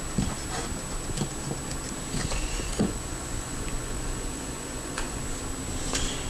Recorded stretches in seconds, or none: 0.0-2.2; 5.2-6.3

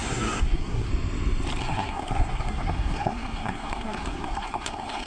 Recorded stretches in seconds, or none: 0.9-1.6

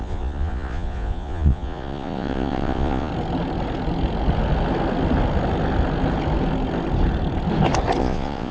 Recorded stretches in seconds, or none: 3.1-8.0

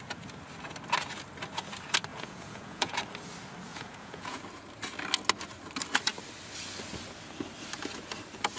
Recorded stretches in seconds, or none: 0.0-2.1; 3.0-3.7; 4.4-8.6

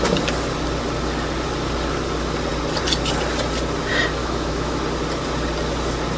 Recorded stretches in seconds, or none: 0.0-4.2; 4.8-6.2

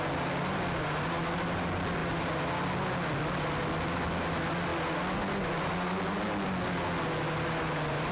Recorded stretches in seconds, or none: 0.0-8.1

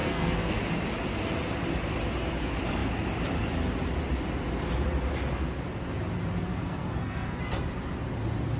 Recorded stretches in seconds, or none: 0.6-6.5; 7.4-8.6

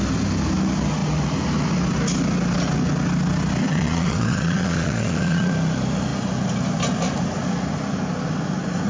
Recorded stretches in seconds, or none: 0.0-3.7; 5.5-8.9